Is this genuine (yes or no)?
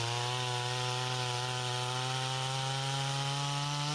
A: yes